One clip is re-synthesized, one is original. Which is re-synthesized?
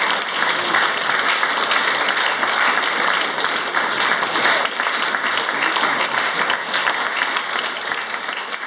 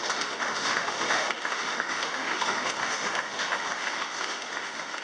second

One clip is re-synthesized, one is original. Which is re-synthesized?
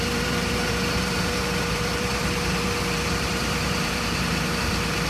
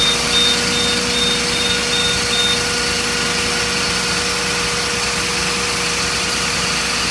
first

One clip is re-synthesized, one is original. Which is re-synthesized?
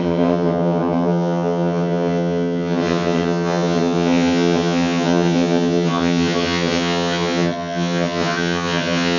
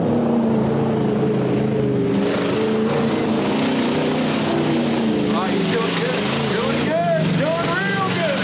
first